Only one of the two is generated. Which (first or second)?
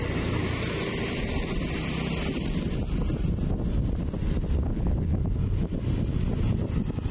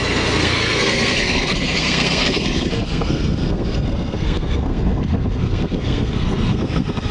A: second